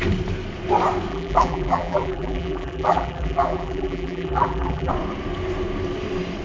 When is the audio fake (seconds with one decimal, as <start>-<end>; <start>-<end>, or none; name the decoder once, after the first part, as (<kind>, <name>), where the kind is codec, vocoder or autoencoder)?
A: 1.1-4.9 (vocoder, BigVGAN v2)